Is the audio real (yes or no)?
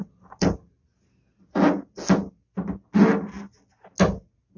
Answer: yes